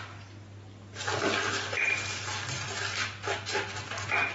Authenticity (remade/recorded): recorded